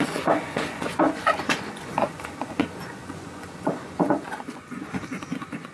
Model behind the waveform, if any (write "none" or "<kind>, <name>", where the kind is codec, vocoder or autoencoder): vocoder, Vocos